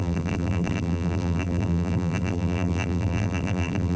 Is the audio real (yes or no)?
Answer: no